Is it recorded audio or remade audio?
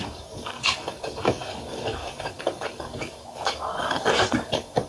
remade